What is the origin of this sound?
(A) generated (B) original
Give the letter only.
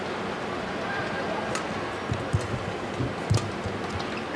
B